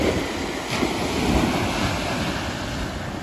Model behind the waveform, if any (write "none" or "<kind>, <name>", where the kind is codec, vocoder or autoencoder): none